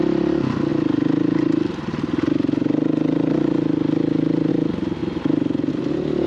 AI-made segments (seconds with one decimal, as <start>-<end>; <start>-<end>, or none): none